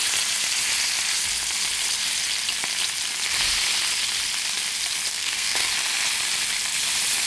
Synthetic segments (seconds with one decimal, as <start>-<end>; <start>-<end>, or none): 5.1-5.7